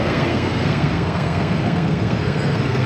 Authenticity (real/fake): fake